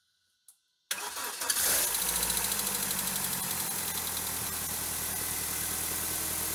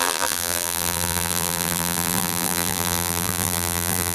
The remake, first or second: second